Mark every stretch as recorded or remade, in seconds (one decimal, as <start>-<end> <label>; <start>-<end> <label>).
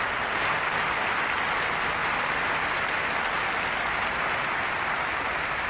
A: 0.0-5.7 recorded